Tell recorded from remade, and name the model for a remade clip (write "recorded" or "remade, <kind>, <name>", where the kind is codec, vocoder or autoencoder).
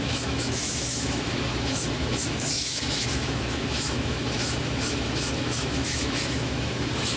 remade, autoencoder, DAC-VAE